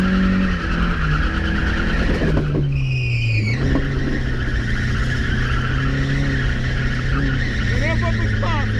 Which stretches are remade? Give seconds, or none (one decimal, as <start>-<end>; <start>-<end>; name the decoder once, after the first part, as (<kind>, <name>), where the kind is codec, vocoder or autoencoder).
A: none